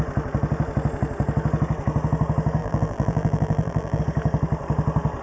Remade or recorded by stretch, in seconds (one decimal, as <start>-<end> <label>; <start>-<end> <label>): 0.0-2.6 recorded; 2.6-4.0 remade; 4.0-5.2 recorded